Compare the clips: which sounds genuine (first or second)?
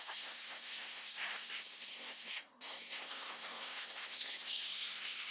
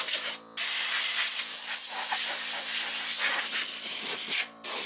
second